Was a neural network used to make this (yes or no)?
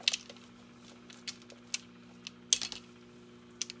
no